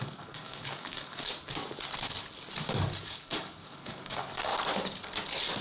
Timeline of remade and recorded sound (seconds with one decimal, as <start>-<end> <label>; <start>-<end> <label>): 0.0-1.3 remade; 1.3-2.6 recorded; 2.6-4.5 remade; 4.5-5.6 recorded